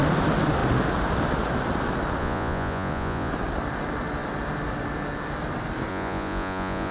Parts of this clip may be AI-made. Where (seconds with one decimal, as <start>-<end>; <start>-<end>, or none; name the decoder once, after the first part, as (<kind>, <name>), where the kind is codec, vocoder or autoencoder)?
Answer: 2.2-3.3 (vocoder, Vocos); 5.9-6.9